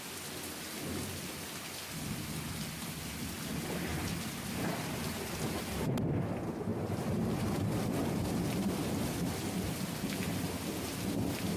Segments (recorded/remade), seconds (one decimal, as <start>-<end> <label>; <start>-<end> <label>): 0.0-3.9 recorded; 3.9-4.9 remade; 4.9-6.7 recorded; 6.7-9.4 remade; 9.4-11.6 recorded